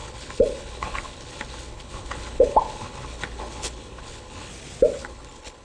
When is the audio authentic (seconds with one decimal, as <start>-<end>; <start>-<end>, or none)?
4.5-5.0